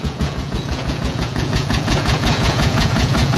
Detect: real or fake fake